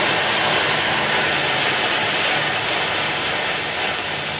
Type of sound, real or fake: real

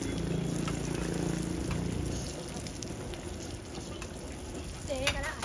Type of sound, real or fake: real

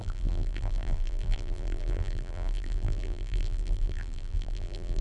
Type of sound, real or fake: fake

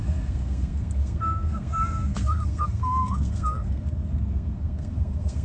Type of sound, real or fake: fake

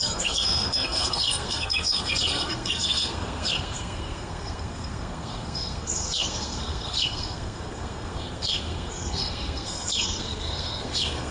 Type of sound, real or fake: fake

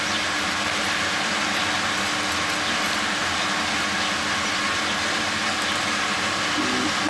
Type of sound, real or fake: real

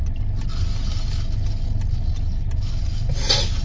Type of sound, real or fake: real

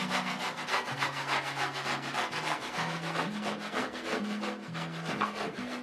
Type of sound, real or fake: fake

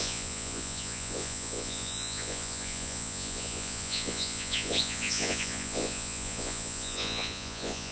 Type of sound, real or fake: fake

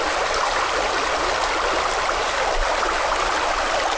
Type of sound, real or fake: real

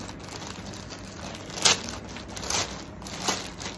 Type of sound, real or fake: real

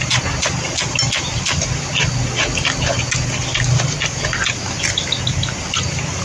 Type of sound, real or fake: real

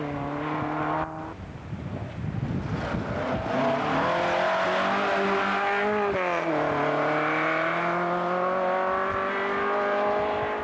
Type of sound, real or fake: real